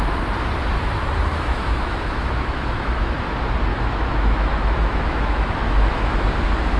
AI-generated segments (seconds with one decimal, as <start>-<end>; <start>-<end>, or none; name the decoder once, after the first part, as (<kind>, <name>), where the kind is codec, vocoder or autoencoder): 1.3-3.0 (autoencoder, DAC-VAE); 3.7-6.3